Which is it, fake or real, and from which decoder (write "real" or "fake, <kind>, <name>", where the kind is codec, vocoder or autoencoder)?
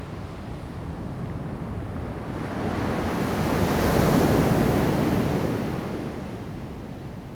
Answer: real